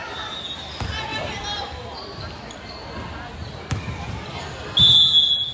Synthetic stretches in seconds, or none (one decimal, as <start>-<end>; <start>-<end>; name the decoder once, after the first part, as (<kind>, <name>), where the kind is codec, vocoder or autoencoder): 1.1-2.2 (vocoder, BigVGAN v2); 3.4-4.1